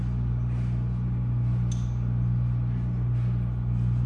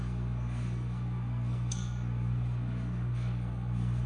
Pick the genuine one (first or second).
first